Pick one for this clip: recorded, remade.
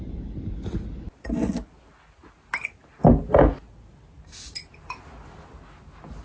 recorded